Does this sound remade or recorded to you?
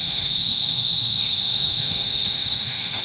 remade